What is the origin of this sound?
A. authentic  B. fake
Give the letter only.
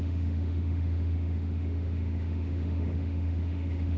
B